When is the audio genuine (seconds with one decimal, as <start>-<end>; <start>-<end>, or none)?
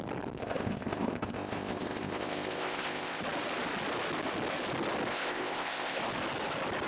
0.0-0.4; 3.2-5.1; 6.0-6.9